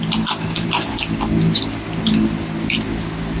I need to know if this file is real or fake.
fake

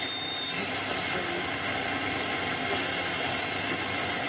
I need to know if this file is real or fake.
real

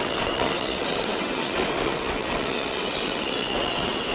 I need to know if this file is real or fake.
fake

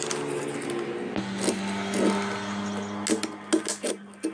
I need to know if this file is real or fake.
real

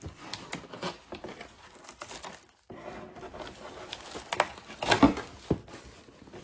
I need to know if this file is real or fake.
real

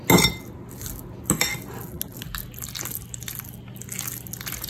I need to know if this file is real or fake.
real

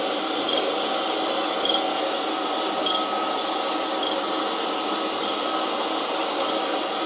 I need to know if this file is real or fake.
real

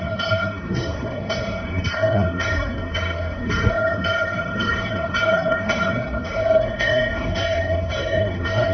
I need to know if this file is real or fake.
fake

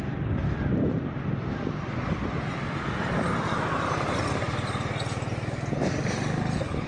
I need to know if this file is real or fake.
real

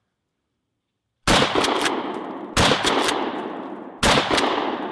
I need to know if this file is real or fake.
real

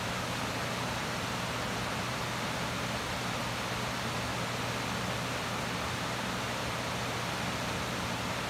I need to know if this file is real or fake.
real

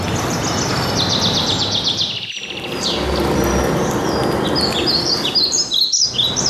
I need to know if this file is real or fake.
real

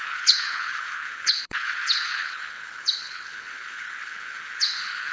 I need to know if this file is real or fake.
fake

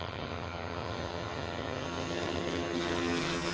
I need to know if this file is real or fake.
fake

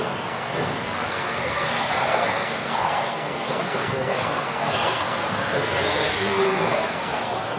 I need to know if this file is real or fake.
fake